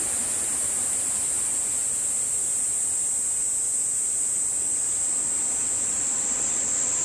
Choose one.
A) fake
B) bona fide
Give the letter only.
B